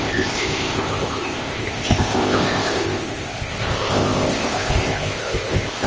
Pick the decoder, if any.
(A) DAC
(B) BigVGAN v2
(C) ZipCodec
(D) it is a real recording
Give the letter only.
C